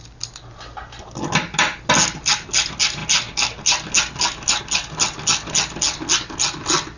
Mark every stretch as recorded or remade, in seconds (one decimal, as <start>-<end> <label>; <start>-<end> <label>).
0.0-7.0 recorded